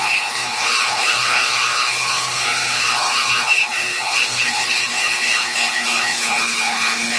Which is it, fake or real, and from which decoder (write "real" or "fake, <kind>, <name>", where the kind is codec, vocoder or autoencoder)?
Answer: fake, codec, HILCodec